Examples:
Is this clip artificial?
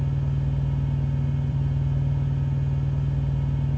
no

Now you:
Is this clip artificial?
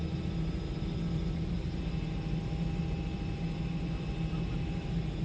no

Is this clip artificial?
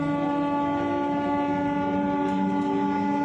no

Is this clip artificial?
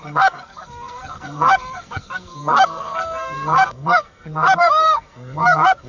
yes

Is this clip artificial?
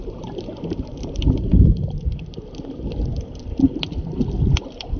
no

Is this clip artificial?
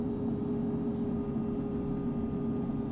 no